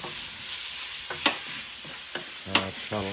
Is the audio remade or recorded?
recorded